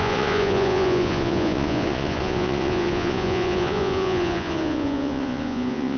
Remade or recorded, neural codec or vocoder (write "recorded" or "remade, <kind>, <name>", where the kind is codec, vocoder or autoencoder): remade, vocoder, Vocos